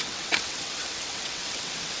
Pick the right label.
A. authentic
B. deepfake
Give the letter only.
B